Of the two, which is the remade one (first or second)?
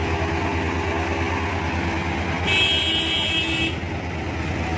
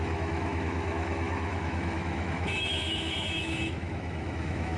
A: second